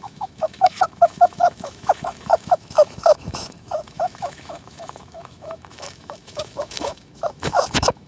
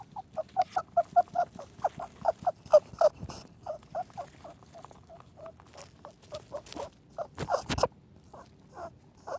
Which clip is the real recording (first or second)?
second